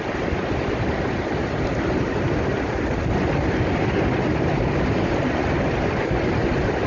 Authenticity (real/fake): real